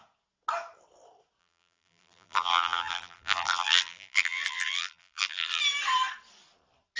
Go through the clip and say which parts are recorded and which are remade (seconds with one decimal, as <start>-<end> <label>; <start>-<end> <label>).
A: 0.0-1.4 recorded; 1.4-5.6 remade; 5.6-7.0 recorded